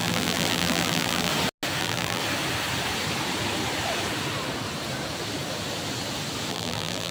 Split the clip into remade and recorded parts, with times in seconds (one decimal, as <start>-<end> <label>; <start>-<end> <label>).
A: 0.0-1.3 remade; 1.3-1.8 recorded; 1.8-2.2 remade; 2.2-6.5 recorded; 6.5-7.1 remade

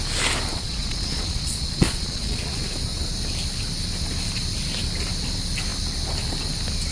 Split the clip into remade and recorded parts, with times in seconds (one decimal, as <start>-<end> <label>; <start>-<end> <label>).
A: 0.0-0.5 recorded; 0.5-2.6 remade; 2.6-6.9 recorded

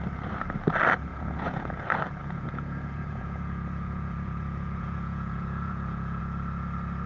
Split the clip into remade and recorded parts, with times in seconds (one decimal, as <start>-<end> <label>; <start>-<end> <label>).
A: 0.0-1.1 recorded; 1.1-1.8 remade; 1.8-2.2 recorded; 2.2-6.2 remade; 6.2-7.1 recorded

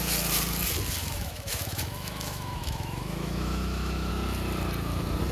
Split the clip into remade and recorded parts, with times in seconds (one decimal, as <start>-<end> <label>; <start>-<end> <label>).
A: 0.0-1.0 recorded; 1.0-4.1 remade; 4.1-5.3 recorded

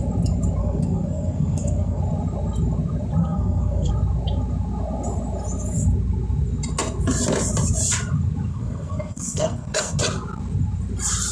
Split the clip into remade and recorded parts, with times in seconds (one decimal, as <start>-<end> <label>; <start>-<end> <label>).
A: 0.0-0.6 recorded; 0.6-2.0 remade; 2.0-3.2 recorded; 3.2-3.9 remade; 3.9-8.5 recorded; 8.5-10.0 remade; 10.0-11.3 recorded